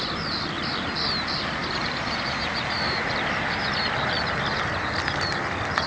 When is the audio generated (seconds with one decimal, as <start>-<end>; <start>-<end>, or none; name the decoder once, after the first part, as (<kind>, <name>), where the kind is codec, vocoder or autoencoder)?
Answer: none

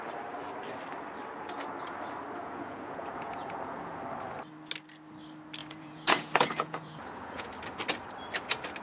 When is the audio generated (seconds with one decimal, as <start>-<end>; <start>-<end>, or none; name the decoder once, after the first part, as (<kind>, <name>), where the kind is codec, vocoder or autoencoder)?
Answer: 2.4-4.0 (vocoder, Vocos); 5.6-7.5

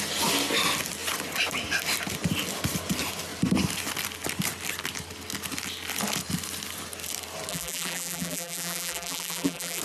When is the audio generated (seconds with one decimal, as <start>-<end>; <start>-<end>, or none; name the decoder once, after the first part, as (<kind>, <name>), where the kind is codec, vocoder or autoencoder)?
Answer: 7.5-9.8 (vocoder, BigVGAN v2)

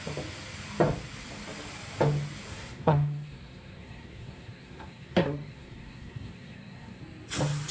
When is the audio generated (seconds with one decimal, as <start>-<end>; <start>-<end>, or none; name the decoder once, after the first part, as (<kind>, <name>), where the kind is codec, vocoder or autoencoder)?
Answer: 2.5-7.0 (codec, SNAC)